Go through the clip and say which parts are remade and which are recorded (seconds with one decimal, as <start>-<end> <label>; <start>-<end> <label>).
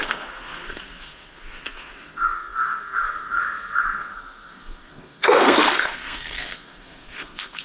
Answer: 0.0-7.6 remade